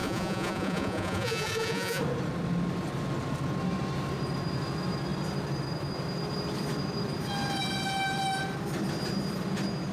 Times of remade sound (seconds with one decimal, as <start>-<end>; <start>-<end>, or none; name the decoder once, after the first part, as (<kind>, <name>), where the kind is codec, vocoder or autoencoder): 0.0-2.0 (vocoder, Vocos)